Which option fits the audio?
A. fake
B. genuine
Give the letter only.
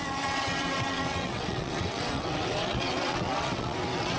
A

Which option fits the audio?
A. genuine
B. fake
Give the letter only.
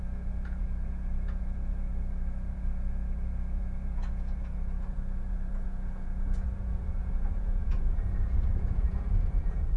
B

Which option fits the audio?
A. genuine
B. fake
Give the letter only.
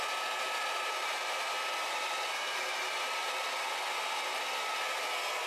A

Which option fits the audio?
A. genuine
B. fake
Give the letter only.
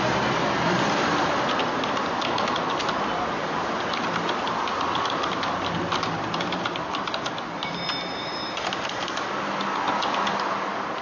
A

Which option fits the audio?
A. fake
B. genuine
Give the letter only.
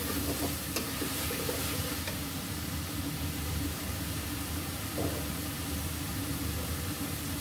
A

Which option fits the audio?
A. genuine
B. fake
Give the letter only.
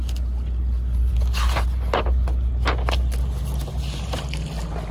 A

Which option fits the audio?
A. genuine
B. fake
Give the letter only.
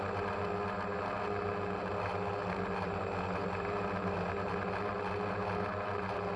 A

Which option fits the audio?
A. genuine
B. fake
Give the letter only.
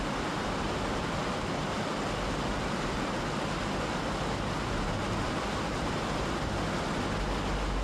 A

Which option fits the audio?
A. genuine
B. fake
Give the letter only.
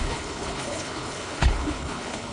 B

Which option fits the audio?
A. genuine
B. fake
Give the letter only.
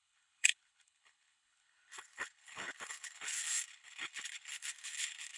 B